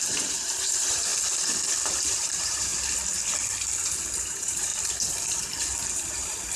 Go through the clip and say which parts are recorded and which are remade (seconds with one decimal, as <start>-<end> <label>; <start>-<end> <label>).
0.0-1.1 remade; 1.1-2.0 recorded; 2.0-2.7 remade; 2.7-4.2 recorded; 4.2-4.7 remade; 4.7-6.1 recorded; 6.1-6.6 remade